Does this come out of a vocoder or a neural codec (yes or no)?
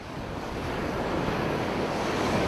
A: yes